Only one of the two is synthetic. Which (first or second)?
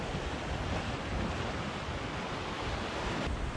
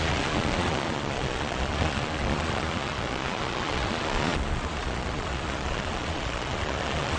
second